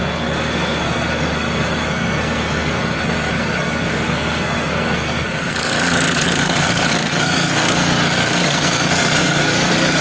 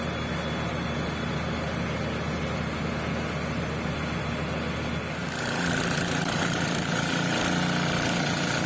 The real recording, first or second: second